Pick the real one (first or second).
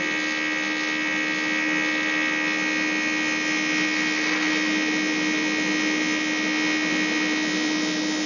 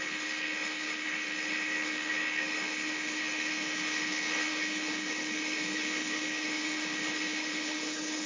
first